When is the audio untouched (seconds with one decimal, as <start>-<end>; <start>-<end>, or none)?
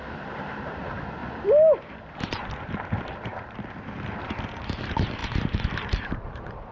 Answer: 1.2-2.3; 3.3-4.6